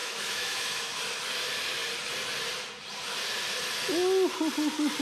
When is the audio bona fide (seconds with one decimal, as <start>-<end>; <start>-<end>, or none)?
1.0-5.0